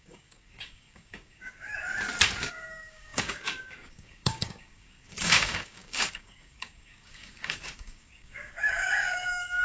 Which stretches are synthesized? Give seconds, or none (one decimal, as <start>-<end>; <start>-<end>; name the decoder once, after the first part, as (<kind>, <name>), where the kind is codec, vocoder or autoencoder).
0.0-1.7 (codec, DAC); 2.4-9.6